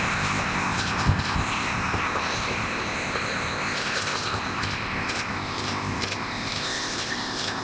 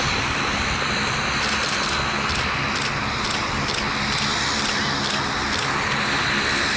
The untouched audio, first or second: second